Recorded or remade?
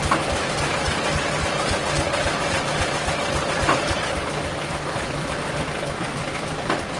remade